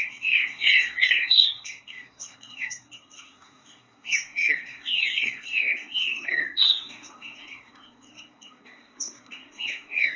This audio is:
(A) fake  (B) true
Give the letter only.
A